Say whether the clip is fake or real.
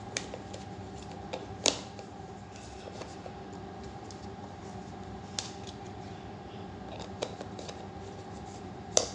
fake